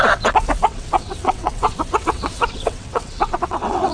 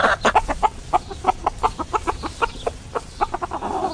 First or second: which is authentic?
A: second